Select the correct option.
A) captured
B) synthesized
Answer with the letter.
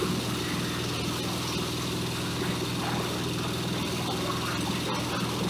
A